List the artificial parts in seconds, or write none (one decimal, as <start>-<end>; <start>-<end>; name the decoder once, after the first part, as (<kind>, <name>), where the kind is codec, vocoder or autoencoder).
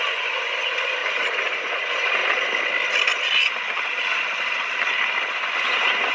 0.0-2.2 (vocoder, Vocos); 5.3-6.1